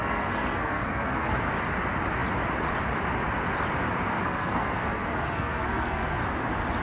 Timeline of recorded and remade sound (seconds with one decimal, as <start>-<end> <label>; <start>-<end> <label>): 0.0-1.5 remade; 1.5-4.1 recorded; 4.1-6.2 remade; 6.2-6.8 recorded